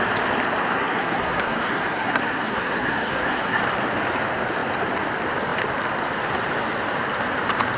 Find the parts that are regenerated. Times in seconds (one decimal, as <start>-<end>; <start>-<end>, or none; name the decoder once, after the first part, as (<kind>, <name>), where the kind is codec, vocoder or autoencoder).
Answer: 0.7-3.6 (codec, SNAC)